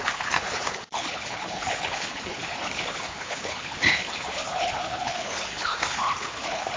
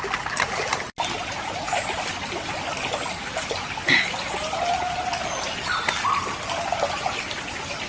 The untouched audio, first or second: second